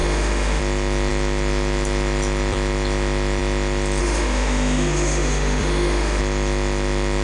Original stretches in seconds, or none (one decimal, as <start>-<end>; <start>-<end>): 0.6-4.0; 6.2-7.2